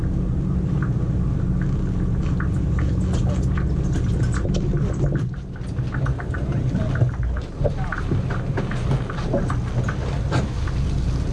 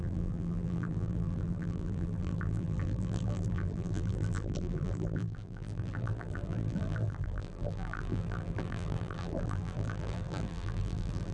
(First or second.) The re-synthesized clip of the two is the second